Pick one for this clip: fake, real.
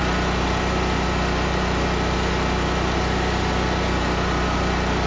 real